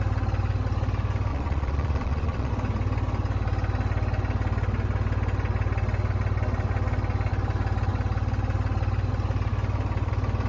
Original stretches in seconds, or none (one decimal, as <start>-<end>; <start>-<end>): 0.0-1.3; 2.5-10.5